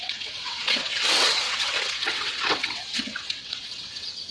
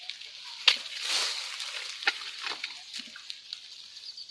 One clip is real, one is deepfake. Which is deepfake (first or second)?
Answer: first